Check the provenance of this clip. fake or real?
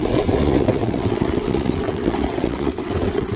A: fake